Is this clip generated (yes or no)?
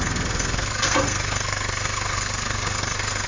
yes